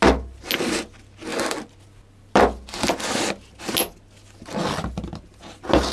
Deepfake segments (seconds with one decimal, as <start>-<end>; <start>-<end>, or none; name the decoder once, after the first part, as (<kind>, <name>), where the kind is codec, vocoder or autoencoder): none

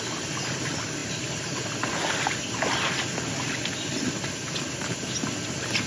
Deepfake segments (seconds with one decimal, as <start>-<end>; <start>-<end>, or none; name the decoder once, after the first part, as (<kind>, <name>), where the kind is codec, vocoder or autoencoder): none

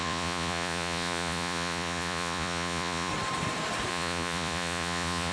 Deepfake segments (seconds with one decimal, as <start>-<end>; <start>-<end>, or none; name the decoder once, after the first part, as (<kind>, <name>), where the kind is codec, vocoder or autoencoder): 0.0-3.1 (vocoder, Vocos); 3.9-5.3

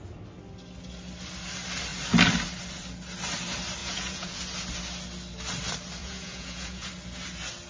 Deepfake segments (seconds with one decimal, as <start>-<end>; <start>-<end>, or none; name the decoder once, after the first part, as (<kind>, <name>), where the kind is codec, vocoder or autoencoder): 3.8-4.4 (vocoder, Vocos); 6.0-6.9

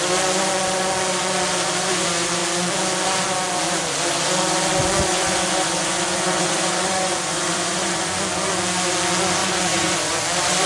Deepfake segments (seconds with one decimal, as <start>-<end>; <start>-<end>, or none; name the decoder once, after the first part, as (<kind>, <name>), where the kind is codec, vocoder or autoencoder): 5.1-8.2 (vocoder, Vocos); 9.4-10.2